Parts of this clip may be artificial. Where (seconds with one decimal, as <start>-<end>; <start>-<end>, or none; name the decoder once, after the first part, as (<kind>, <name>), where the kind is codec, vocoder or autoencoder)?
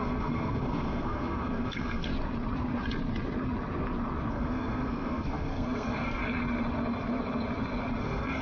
0.0-2.1 (codec, SNAC); 4.3-6.2; 8.0-8.4